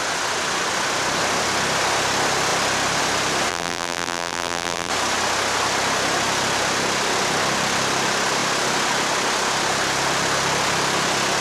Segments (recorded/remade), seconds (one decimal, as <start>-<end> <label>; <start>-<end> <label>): 0.0-3.5 recorded; 3.5-4.9 remade; 4.9-11.4 recorded